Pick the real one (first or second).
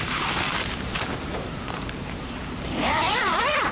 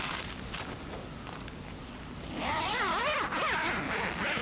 second